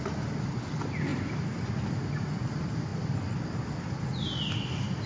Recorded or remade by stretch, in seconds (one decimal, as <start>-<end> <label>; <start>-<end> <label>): 0.0-5.1 recorded

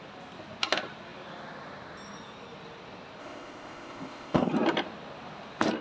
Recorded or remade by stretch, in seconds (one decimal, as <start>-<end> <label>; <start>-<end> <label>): 0.0-3.2 recorded; 3.2-4.5 remade; 4.5-5.8 recorded

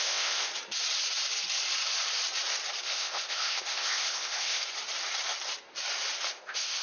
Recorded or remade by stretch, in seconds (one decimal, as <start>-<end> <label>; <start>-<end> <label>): 0.0-0.5 remade; 0.5-2.8 recorded; 2.8-4.6 remade; 4.6-6.3 recorded; 6.3-6.8 remade

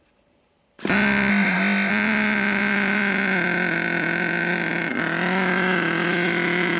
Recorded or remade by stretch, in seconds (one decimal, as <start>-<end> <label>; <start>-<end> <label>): 0.0-1.3 recorded; 1.3-1.9 remade; 1.9-6.8 recorded

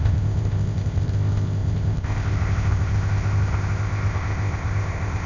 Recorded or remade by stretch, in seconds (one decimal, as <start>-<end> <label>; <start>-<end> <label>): 0.0-5.3 remade

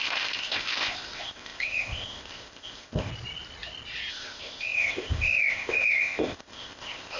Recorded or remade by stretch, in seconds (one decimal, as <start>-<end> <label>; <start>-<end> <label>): 0.0-3.1 remade; 3.1-4.1 recorded; 4.1-7.2 remade

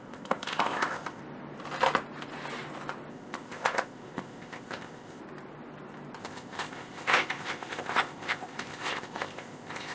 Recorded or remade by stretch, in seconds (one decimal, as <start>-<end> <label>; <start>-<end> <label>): 0.0-1.2 remade; 1.2-3.1 recorded; 3.1-5.2 remade; 5.2-6.2 recorded; 6.2-9.9 remade